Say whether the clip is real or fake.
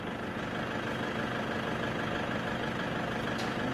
real